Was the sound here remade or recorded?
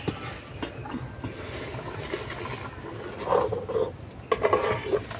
recorded